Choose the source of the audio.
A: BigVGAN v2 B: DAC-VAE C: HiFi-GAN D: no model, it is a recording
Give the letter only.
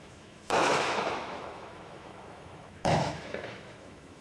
B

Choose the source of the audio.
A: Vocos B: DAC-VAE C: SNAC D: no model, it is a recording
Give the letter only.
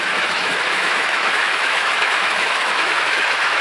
B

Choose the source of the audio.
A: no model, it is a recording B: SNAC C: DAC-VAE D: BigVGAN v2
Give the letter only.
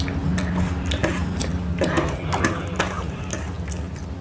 A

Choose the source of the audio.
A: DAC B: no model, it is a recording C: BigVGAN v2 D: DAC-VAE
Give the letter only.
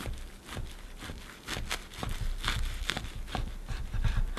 B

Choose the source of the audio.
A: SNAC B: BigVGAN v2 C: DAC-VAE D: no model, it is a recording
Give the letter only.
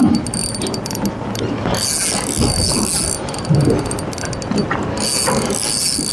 D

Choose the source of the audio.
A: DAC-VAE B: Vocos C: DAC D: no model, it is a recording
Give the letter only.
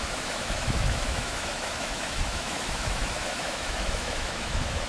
A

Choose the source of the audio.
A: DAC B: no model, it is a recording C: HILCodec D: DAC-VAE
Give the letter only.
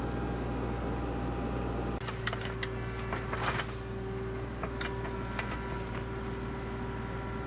B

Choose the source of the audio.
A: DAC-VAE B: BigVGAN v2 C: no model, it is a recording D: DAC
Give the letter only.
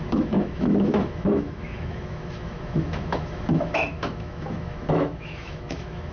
A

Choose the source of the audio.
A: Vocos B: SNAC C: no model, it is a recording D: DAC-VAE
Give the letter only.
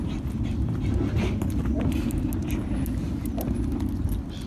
C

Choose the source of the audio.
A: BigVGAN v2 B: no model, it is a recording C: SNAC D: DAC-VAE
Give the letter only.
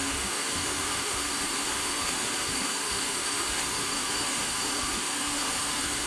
D